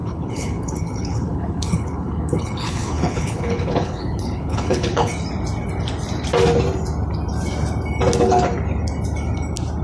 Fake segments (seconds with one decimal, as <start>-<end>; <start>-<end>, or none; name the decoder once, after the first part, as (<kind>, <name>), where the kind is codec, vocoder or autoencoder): 0.0-5.1 (codec, HILCodec)